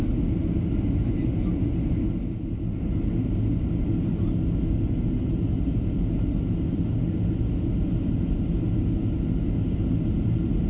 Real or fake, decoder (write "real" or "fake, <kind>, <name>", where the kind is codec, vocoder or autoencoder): real